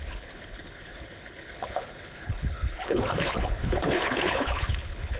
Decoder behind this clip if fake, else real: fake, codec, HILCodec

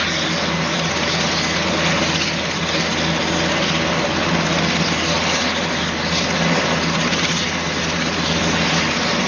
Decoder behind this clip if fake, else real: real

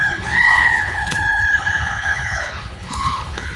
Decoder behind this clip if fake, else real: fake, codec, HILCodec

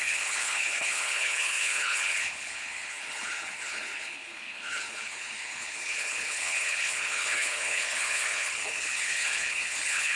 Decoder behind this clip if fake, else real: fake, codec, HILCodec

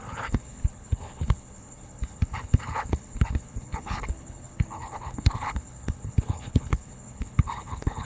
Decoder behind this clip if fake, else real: fake, codec, HILCodec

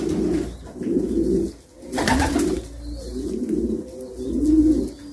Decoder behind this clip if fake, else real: real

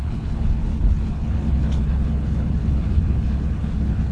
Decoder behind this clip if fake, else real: fake, codec, HILCodec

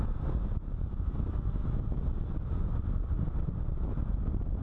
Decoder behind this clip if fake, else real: real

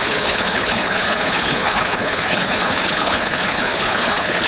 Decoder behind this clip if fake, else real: fake, codec, HILCodec